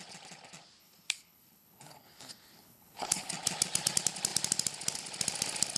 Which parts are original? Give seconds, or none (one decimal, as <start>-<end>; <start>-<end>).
0.0-0.8; 3.3-5.8